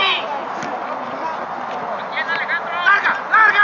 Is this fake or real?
real